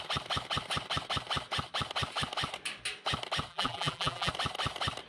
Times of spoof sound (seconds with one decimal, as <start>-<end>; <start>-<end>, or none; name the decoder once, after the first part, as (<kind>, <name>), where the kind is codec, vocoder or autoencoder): 3.5-4.3 (vocoder, BigVGAN v2)